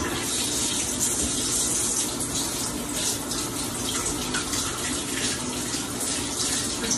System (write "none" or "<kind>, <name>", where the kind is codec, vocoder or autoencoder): none